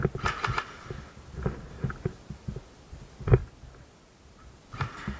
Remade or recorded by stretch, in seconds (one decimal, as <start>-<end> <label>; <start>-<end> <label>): 0.0-5.2 recorded